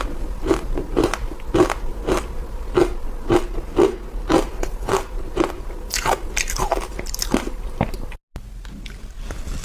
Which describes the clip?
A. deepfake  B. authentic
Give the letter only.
B